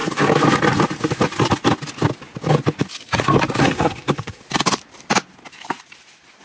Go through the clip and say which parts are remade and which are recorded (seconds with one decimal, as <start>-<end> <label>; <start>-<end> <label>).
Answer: 0.0-3.6 recorded; 3.6-4.4 remade; 4.4-6.4 recorded